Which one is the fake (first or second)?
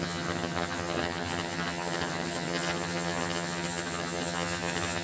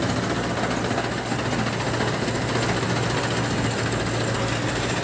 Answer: first